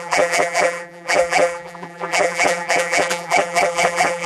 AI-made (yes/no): yes